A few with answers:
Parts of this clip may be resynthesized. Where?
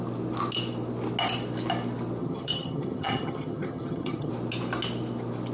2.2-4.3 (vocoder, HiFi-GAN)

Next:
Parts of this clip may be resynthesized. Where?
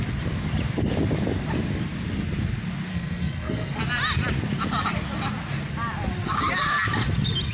2.9-3.8 (codec, SNAC)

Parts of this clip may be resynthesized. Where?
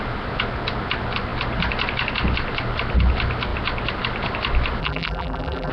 4.8-5.7 (vocoder, BigVGAN v2)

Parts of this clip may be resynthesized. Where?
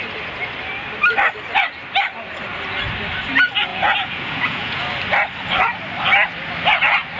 3.7-4.8 (vocoder, Vocos)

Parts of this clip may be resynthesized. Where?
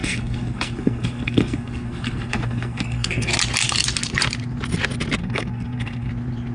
0.0-3.3 (codec, SNAC); 5.2-6.1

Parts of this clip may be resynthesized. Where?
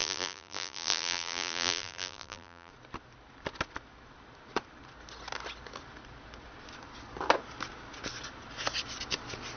0.0-2.7 (vocoder, BigVGAN v2)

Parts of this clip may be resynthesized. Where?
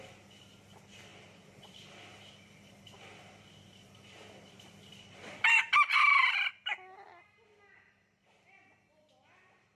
1.1-5.6 (vocoder, BigVGAN v2)